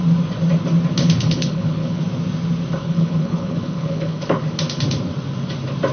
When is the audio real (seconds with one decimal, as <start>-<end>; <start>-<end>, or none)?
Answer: 0.0-1.0; 2.0-2.8; 4.4-5.9